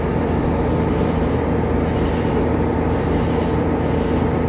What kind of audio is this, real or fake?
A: real